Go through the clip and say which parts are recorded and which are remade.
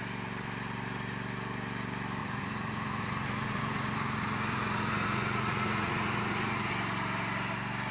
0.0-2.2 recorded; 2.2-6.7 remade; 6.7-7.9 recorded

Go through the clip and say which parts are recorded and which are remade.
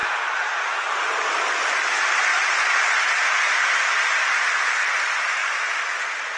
0.0-5.4 recorded; 5.4-6.0 remade; 6.0-6.4 recorded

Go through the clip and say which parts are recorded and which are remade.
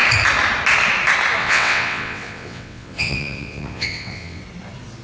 0.0-1.4 recorded; 1.4-4.4 remade; 4.4-5.0 recorded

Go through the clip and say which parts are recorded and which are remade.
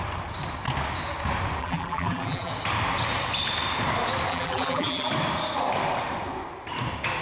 0.0-1.6 recorded; 1.6-2.5 remade; 2.5-4.3 recorded; 4.3-5.1 remade; 5.1-7.2 recorded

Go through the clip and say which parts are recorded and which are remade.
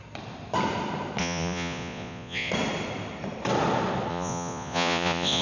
0.0-1.2 recorded; 1.2-2.5 remade; 2.5-4.1 recorded; 4.1-5.4 remade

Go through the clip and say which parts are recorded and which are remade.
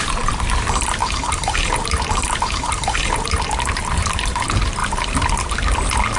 0.0-1.0 recorded; 1.0-3.5 remade; 3.5-4.8 recorded; 4.8-5.3 remade; 5.3-6.2 recorded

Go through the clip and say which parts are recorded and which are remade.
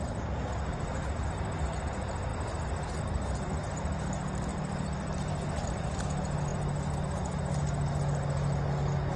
0.0-2.3 recorded; 2.3-3.0 remade; 3.0-4.5 recorded; 4.5-6.0 remade; 6.0-9.2 recorded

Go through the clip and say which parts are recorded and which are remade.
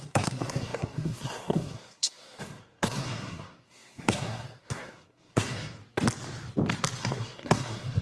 0.0-5.8 remade; 5.8-7.0 recorded; 7.0-8.0 remade